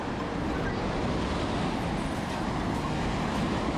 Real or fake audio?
real